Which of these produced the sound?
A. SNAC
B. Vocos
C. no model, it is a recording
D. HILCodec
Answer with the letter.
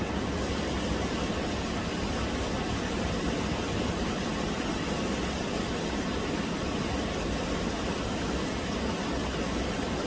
C